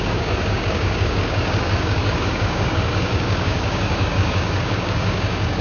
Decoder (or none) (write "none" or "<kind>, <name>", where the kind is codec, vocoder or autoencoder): codec, DAC